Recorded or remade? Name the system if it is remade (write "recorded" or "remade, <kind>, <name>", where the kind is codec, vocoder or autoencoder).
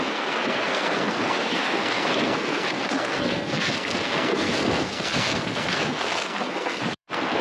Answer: remade, codec, SNAC